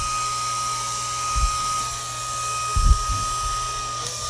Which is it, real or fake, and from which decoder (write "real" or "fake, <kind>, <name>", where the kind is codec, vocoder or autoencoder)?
real